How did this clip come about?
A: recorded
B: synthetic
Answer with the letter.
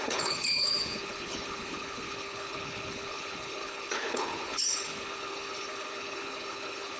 B